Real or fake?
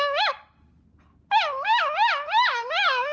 real